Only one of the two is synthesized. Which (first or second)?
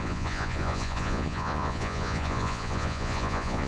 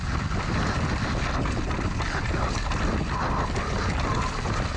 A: first